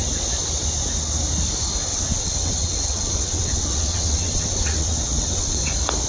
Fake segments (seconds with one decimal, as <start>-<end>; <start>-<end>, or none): 1.9-5.6